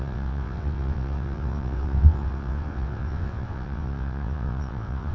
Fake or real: fake